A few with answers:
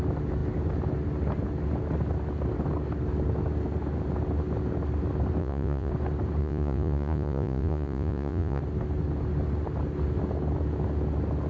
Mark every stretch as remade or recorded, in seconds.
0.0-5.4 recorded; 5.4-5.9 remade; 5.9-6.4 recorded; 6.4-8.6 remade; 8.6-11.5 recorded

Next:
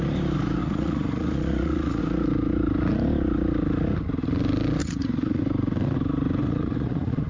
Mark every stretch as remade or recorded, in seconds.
0.0-0.6 recorded; 0.6-2.0 remade; 2.0-4.8 recorded; 4.8-5.4 remade; 5.4-6.4 recorded; 6.4-7.3 remade

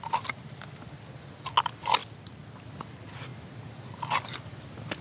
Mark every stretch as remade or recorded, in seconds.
0.0-5.0 recorded